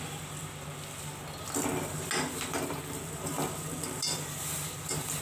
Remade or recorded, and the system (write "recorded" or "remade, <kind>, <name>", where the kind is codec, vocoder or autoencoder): recorded